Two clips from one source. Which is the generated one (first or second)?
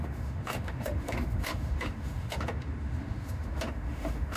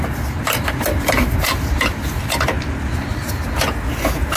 first